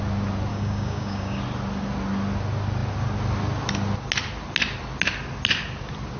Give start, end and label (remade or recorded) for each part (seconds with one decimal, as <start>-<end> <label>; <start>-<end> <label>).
0.0-0.5 recorded; 0.5-1.4 remade; 1.4-6.2 recorded